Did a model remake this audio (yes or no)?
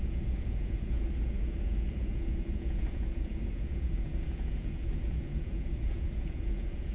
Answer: yes